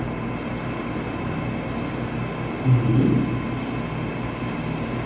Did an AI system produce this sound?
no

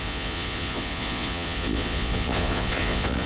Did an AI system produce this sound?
yes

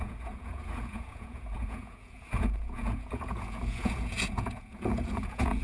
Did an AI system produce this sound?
yes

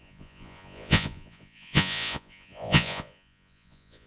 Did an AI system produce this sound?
yes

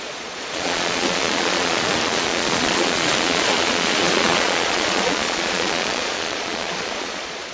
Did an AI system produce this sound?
yes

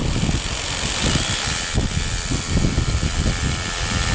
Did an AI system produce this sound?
no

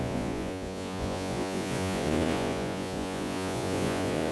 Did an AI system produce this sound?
yes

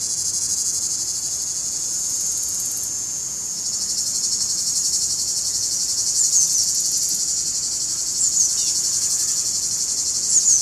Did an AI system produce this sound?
yes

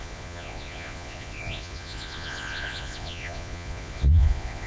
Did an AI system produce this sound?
yes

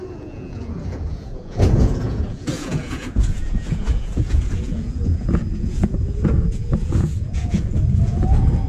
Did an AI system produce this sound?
yes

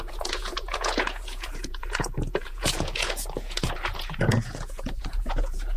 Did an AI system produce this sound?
yes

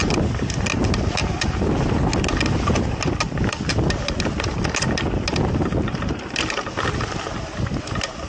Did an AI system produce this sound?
no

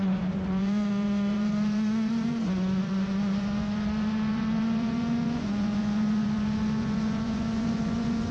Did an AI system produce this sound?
yes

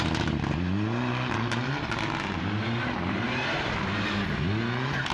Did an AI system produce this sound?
no